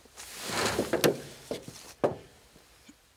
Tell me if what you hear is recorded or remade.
recorded